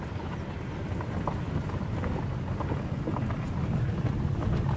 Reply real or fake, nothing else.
real